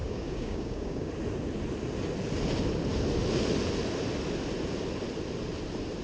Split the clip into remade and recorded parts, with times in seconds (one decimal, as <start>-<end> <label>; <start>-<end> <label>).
0.0-1.1 remade; 1.1-6.0 recorded